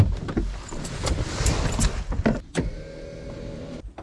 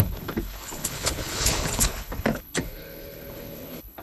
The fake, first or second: second